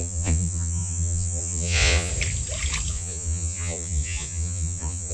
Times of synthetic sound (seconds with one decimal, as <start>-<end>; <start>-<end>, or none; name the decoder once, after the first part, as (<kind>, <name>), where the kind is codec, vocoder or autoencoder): 0.0-2.1 (vocoder, Vocos); 2.9-5.1